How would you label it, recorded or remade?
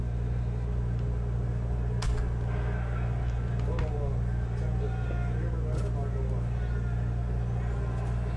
recorded